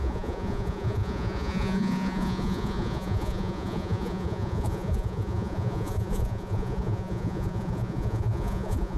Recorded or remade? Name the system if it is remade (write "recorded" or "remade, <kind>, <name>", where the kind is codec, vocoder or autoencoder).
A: remade, vocoder, Vocos